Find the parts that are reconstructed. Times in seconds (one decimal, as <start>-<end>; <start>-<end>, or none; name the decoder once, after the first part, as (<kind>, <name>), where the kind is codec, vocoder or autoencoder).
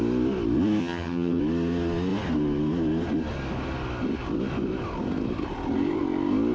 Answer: 0.8-1.4 (vocoder, HiFi-GAN)